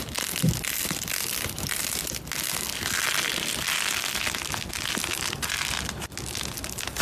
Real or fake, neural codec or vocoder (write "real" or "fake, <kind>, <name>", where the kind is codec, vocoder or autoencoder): real